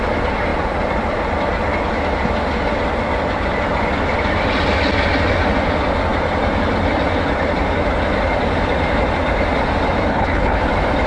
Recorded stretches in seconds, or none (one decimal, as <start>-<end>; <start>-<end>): 0.0-10.1; 10.6-11.1